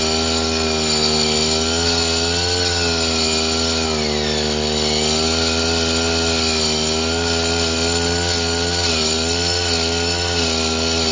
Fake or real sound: real